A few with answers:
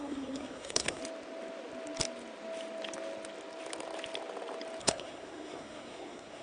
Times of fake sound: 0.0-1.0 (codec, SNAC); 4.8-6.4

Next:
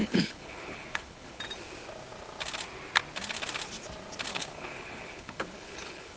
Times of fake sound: 0.0-1.4 (codec, HILCodec); 4.3-6.2

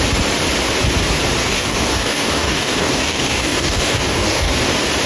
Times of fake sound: 1.4-4.5 (codec, DAC)

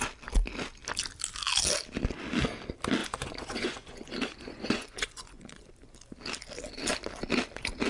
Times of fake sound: 3.0-5.7 (vocoder, Vocos)

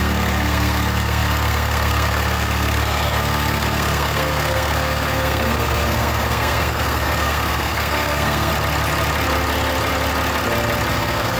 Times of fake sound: 0.0-8.5 (codec, SNAC); 10.9-11.4

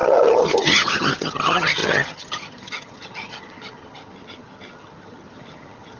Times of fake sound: 0.0-6.0 (vocoder, HiFi-GAN)